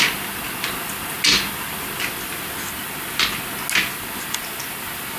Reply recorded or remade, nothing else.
recorded